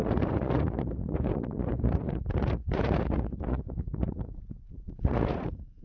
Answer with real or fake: fake